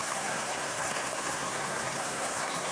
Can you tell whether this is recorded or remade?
remade